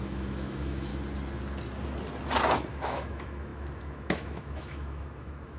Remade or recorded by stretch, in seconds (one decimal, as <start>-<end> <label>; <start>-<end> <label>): 0.0-0.9 remade; 0.9-2.7 recorded; 2.7-5.6 remade